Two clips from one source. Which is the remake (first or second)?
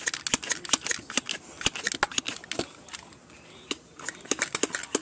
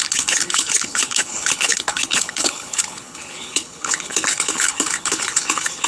second